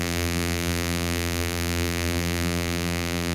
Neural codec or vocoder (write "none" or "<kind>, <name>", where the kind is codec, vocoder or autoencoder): vocoder, BigVGAN v2